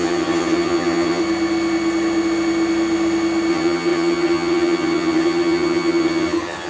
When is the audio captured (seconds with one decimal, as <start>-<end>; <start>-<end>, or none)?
1.2-3.5